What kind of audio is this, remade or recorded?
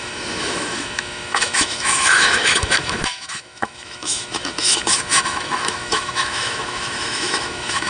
remade